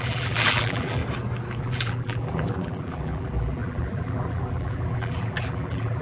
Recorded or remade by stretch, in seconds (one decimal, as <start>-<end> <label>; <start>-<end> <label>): 0.0-1.0 remade; 1.0-1.6 recorded; 1.6-6.0 remade